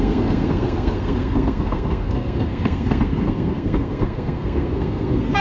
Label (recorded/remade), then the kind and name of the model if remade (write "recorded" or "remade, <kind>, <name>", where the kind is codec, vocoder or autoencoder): remade, codec, SNAC